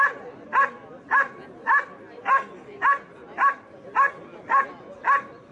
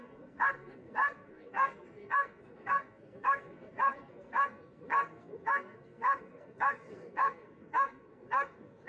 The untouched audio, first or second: first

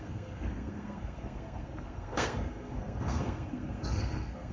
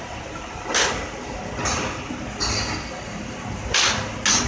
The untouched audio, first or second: second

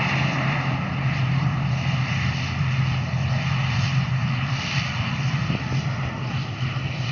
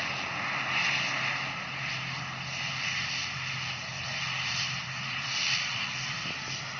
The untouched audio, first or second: second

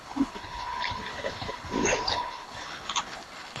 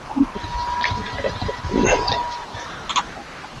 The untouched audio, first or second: second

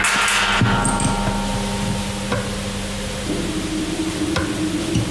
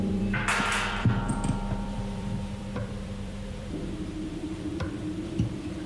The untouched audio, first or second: first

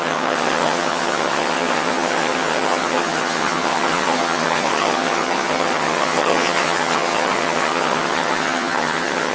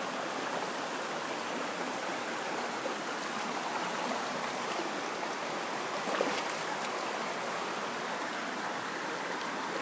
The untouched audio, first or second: second